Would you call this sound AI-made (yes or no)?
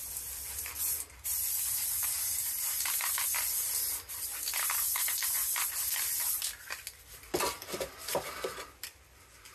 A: yes